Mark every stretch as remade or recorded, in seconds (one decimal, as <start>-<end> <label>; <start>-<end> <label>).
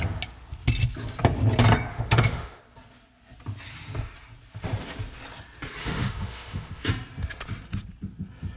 0.0-1.9 recorded; 1.9-2.6 remade; 2.6-5.8 recorded; 5.8-6.9 remade; 6.9-8.6 recorded